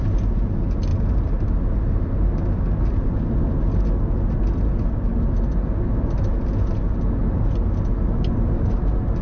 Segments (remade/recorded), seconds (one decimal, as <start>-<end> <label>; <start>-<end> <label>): 0.0-0.9 recorded; 0.9-3.8 remade; 3.8-9.2 recorded